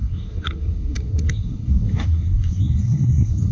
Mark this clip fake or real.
fake